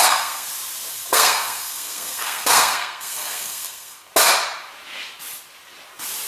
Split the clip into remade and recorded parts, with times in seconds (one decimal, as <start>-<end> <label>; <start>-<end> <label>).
0.0-0.5 remade; 0.5-0.9 recorded; 0.9-4.1 remade; 4.1-6.3 recorded